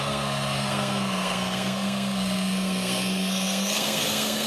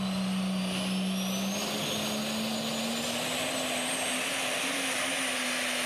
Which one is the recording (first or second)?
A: second